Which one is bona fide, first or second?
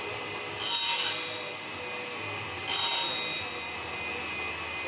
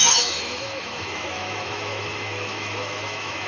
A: first